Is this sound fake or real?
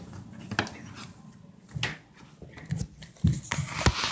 real